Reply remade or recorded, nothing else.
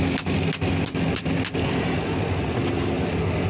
recorded